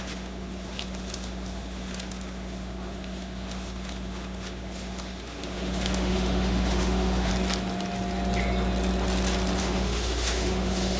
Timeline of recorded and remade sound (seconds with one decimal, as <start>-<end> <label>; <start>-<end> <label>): 0.0-7.3 remade; 7.3-9.6 recorded; 9.6-11.0 remade